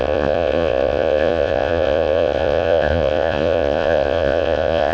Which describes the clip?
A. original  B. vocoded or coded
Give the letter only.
B